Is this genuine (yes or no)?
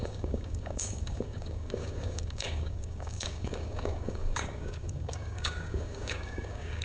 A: no